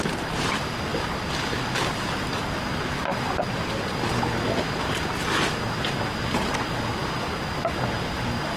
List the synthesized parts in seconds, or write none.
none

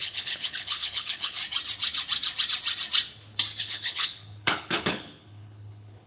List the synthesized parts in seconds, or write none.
0.0-1.4 (codec, HILCodec); 3.6-6.1

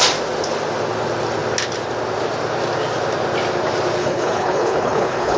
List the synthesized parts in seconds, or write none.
4.0-5.4 (codec, HILCodec)